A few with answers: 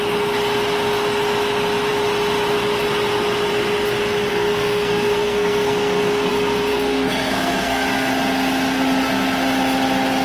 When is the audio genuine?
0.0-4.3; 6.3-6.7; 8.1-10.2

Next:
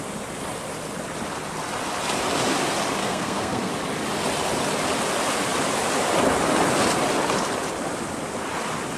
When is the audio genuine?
0.0-3.0; 3.7-9.0

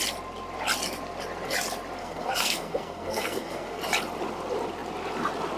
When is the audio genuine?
0.0-2.0; 3.8-5.6

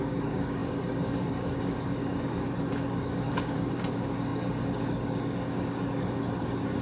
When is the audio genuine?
none